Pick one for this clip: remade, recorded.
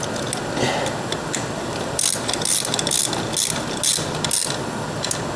recorded